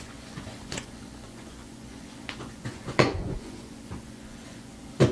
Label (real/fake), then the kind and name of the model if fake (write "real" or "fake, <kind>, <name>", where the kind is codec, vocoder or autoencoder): fake, vocoder, Vocos